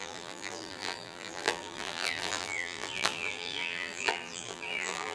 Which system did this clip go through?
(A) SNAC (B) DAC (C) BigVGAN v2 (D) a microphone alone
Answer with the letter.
C